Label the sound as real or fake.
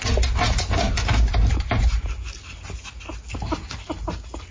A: real